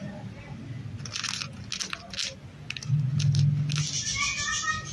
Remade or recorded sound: recorded